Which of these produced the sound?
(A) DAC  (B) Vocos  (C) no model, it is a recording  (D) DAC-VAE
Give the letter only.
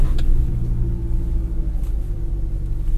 C